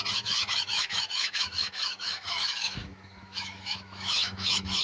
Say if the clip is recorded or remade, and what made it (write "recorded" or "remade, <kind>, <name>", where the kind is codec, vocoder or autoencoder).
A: remade, autoencoder, DAC-VAE